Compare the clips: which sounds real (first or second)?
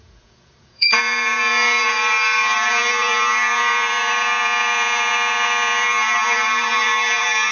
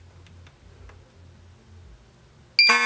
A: second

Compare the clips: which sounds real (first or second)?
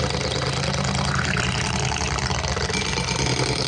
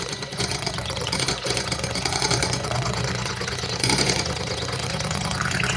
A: first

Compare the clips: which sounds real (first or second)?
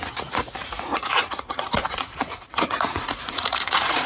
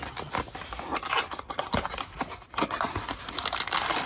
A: second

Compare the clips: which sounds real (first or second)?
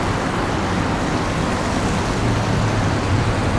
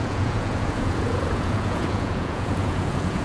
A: first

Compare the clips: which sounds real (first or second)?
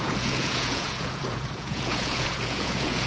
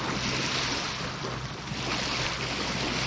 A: second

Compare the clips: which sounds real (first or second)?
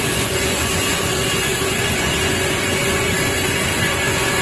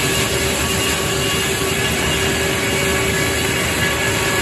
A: second